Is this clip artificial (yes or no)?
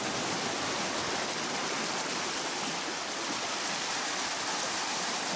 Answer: no